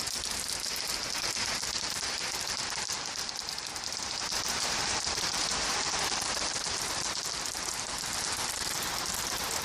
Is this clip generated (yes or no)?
no